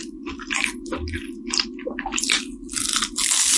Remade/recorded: recorded